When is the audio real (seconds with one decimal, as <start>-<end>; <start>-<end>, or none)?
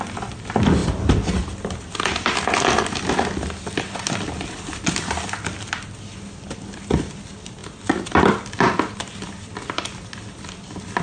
0.0-11.0